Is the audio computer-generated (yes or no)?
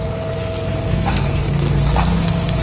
yes